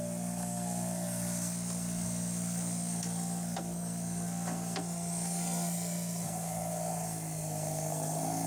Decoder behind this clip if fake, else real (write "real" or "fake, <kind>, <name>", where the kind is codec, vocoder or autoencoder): fake, codec, SNAC